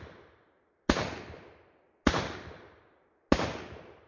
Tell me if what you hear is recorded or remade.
recorded